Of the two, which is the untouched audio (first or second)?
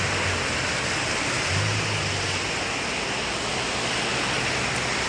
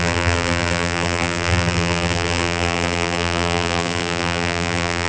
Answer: first